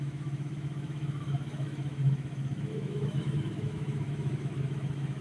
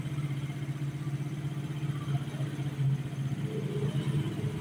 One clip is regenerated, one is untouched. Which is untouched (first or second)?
second